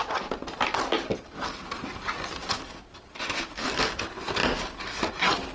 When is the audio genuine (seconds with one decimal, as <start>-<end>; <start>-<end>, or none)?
0.0-3.1; 3.7-5.5